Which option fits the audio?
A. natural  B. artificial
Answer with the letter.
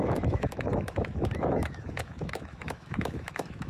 B